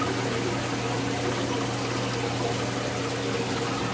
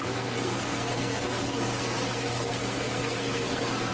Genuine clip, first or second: first